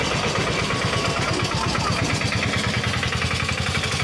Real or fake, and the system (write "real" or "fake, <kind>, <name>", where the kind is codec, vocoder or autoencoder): real